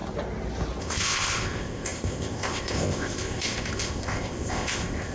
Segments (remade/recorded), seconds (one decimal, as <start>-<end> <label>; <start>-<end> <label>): 0.0-0.8 recorded; 0.8-5.1 remade